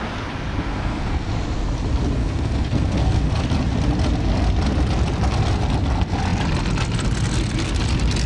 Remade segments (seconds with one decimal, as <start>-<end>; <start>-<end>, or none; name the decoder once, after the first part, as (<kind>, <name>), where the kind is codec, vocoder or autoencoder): 0.7-1.3 (codec, SNAC); 2.2-3.3